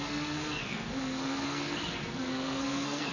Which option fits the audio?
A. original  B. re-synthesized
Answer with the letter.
B